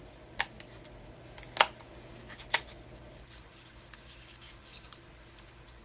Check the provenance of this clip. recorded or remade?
recorded